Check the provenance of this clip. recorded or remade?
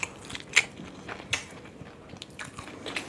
recorded